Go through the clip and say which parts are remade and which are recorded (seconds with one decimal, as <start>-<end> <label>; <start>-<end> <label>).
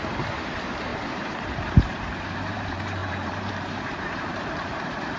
0.0-5.2 remade